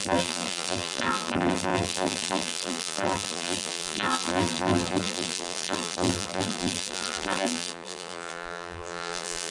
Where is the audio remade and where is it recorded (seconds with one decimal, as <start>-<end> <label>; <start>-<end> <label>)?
0.0-9.5 remade